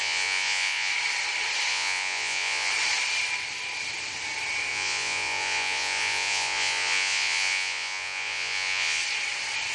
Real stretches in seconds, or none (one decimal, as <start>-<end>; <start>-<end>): 0.9-1.7; 2.7-4.7; 9.0-9.7